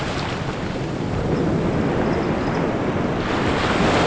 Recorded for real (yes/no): no